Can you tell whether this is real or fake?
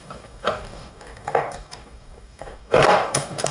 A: fake